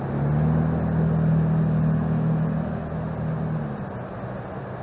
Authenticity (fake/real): real